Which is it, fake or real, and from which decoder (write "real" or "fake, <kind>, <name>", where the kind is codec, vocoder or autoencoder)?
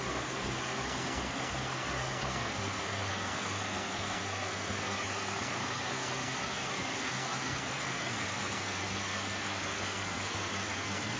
fake, codec, SNAC